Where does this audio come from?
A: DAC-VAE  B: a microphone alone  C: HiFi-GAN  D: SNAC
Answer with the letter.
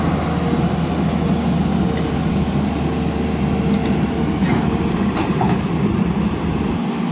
B